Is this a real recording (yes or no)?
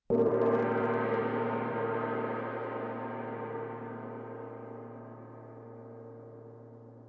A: no